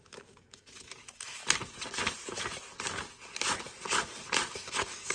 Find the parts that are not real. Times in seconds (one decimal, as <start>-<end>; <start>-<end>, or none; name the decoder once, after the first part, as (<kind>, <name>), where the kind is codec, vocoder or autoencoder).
0.0-1.4 (autoencoder, DAC-VAE); 4.5-5.1